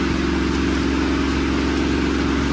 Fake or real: real